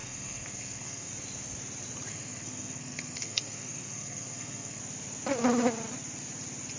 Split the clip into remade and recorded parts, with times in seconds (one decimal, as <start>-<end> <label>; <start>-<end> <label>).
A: 0.0-1.1 remade; 1.1-2.1 recorded; 2.1-4.8 remade; 4.8-6.8 recorded